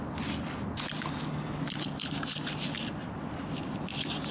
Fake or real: real